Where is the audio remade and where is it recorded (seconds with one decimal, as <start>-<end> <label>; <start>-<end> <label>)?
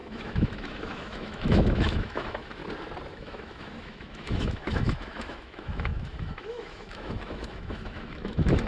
0.0-2.6 remade; 2.6-3.1 recorded; 3.1-8.7 remade